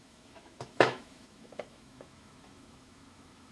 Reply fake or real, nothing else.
fake